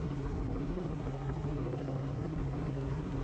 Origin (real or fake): fake